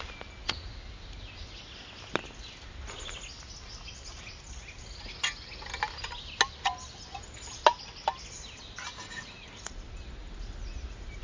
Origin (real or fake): real